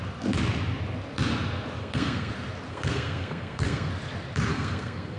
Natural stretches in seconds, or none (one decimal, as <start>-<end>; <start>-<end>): 0.0-1.8; 2.3-2.7; 3.9-4.5